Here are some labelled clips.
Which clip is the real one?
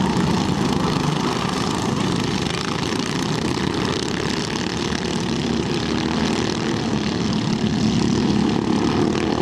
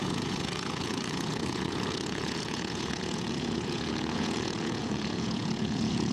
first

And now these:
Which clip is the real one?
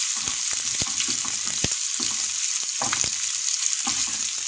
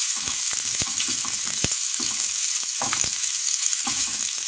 first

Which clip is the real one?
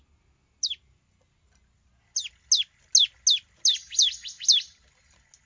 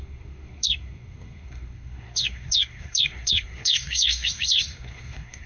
first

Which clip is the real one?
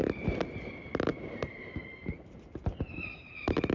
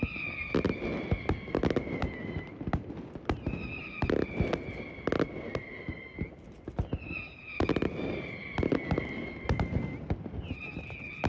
second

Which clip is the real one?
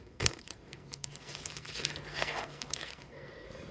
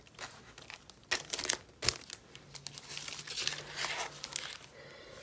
second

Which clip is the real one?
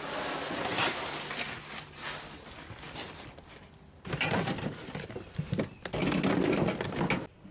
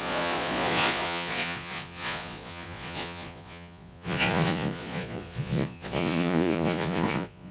first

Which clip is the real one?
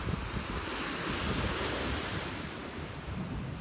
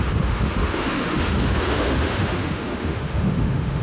first